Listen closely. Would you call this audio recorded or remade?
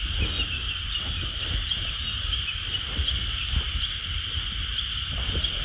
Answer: recorded